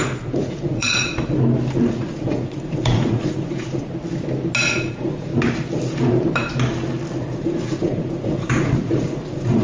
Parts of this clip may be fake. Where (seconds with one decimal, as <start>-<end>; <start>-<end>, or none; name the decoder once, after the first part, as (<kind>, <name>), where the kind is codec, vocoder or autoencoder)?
0.0-1.1 (vocoder, Vocos); 1.9-3.9; 4.8-5.3; 7.2-9.6